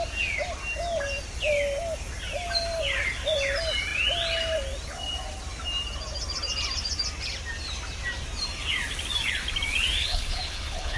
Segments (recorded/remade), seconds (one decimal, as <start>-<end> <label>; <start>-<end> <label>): 0.0-10.0 recorded; 10.0-11.0 remade